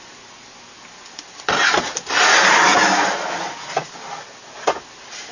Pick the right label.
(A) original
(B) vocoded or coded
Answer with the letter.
A